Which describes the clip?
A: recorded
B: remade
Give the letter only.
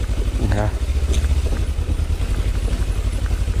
A